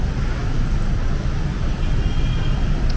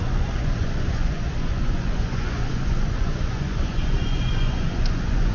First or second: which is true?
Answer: first